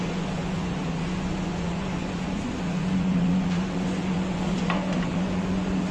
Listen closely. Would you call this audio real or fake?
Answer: fake